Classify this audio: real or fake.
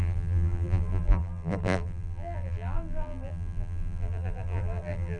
fake